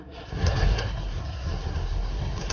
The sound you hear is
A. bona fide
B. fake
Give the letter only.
B